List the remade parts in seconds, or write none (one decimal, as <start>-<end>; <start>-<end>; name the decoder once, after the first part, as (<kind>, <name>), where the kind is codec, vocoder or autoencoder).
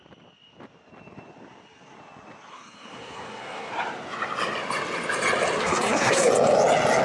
2.5-3.7 (codec, SNAC); 5.6-6.3